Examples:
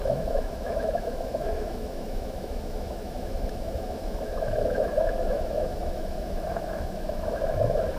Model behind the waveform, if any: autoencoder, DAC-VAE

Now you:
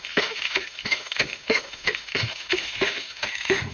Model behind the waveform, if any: autoencoder, DAC-VAE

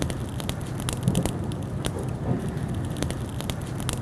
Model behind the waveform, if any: none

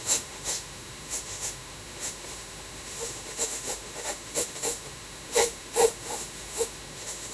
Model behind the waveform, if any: autoencoder, DAC-VAE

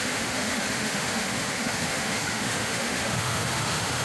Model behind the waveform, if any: autoencoder, DAC-VAE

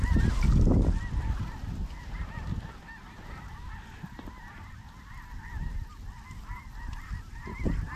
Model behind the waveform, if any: none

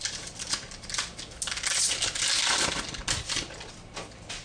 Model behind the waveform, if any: none